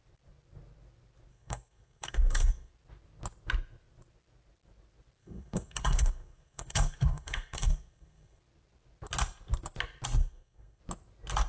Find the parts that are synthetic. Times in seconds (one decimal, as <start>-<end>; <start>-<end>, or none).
1.3-2.7; 5.2-8.4; 10.2-10.8